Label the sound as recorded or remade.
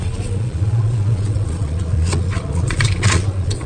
remade